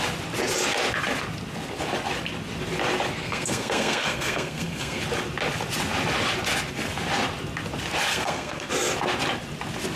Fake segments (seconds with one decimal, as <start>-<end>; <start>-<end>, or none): 3.2-5.0; 8.1-8.7